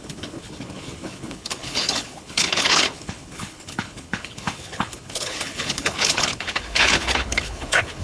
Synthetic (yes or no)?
yes